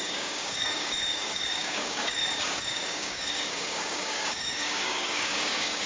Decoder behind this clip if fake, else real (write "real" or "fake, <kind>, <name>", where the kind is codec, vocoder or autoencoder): fake, codec, DAC